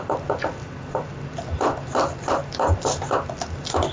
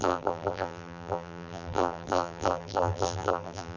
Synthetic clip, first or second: second